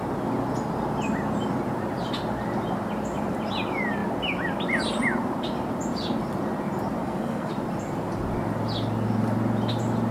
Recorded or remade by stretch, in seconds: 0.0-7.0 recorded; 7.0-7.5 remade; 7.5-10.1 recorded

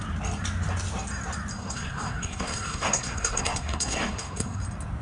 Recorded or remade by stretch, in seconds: 0.0-1.6 recorded; 1.6-4.6 remade; 4.6-5.0 recorded